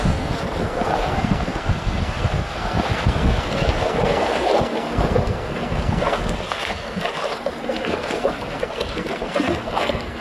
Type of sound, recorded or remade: remade